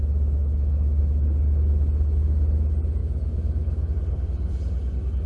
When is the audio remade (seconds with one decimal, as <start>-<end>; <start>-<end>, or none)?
0.4-1.0; 3.0-3.9